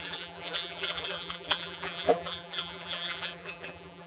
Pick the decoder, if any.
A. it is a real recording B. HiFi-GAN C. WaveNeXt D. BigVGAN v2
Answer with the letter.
D